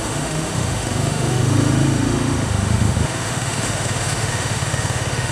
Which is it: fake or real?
fake